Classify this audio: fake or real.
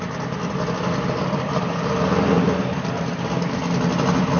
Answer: real